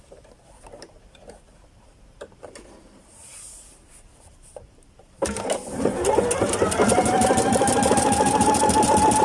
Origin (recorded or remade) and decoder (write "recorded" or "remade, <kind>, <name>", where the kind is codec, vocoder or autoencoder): remade, vocoder, BigVGAN v2